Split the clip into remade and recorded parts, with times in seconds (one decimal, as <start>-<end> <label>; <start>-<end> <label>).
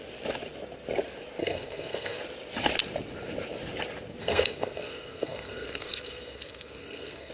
0.0-1.4 recorded; 1.4-2.2 remade; 2.2-4.2 recorded; 4.2-7.3 remade